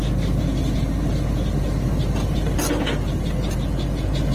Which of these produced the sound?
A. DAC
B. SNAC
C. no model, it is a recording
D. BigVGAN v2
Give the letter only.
C